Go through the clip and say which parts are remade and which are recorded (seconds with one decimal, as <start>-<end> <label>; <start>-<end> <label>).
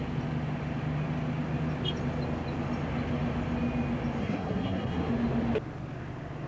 0.0-4.2 recorded; 4.2-5.1 remade; 5.1-6.5 recorded